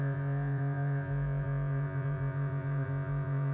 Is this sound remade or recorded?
remade